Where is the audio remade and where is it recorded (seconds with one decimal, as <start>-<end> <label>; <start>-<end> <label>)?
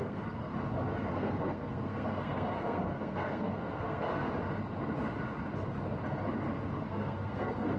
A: 0.0-0.5 remade; 0.5-1.1 recorded; 1.1-4.3 remade; 4.3-6.9 recorded; 6.9-7.8 remade